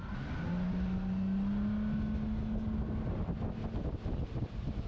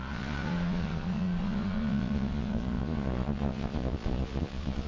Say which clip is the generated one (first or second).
second